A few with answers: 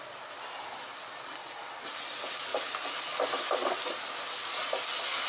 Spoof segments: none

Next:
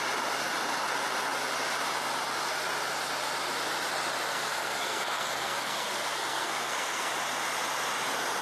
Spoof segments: 4.3-7.1 (codec, SNAC)

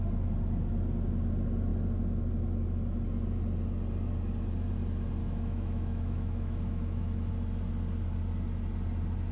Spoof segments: 5.2-7.3 (autoencoder, DAC-VAE)

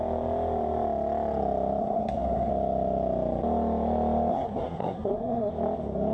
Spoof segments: 1.8-2.5 (codec, SNAC); 4.3-5.5

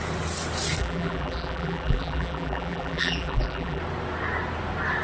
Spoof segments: 0.8-3.8 (vocoder, BigVGAN v2)

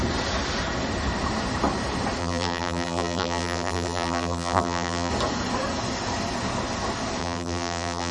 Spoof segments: 2.2-5.1 (vocoder, BigVGAN v2); 7.2-8.1

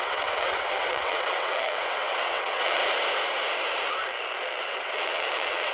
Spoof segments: 0.0-2.8 (vocoder, WaveNeXt); 4.6-5.7

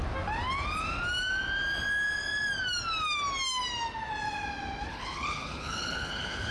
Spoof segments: 4.9-6.5 (codec, HILCodec)